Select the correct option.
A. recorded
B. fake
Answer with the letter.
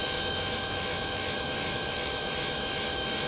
B